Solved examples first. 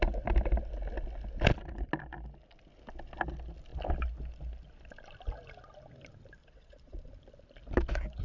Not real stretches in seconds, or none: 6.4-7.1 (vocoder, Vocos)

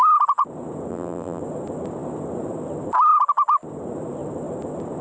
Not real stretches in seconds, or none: 0.9-1.4 (vocoder, BigVGAN v2)

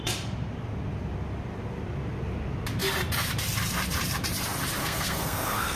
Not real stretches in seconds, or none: 4.8-5.8 (codec, SNAC)

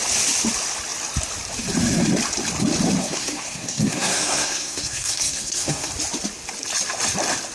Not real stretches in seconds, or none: 3.0-5.9 (codec, SNAC)

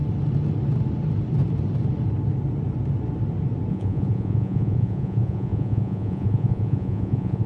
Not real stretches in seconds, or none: 3.7-7.5 (vocoder, Vocos)

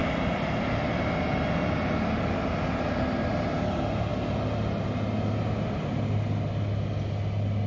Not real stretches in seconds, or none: none

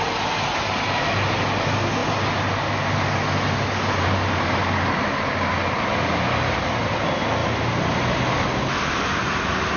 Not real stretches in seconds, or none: none